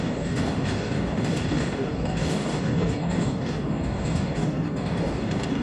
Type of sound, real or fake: fake